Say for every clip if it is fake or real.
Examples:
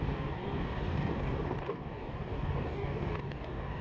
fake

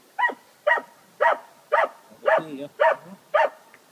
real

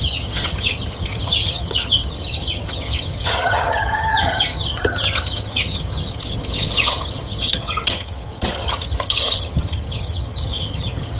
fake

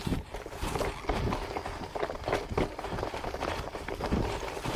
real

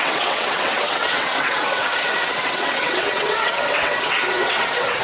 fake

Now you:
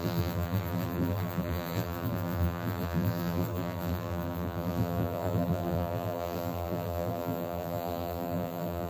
fake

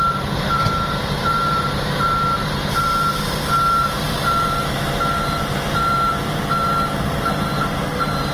fake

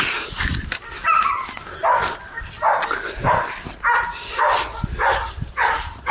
real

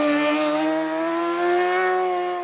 real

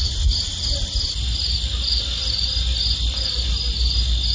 real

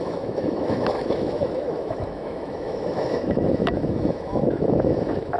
fake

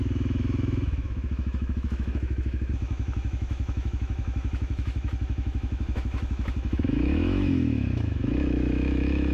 fake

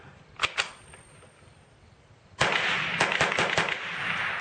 real